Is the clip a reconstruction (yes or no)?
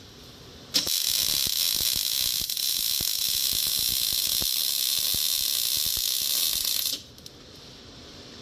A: no